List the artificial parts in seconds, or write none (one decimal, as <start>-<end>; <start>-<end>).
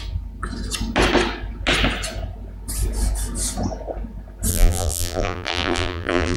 4.5-6.4